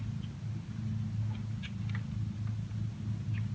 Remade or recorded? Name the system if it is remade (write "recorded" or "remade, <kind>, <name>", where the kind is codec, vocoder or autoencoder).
recorded